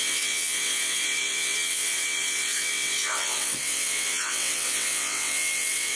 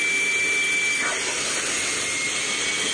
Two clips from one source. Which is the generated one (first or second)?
first